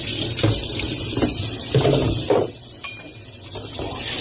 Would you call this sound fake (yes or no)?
no